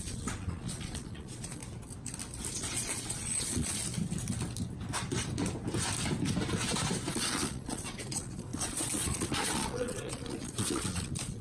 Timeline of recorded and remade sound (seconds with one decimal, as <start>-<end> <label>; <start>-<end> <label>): 0.0-1.6 remade; 1.6-2.5 recorded; 2.5-3.8 remade; 3.8-7.1 recorded; 7.1-11.4 remade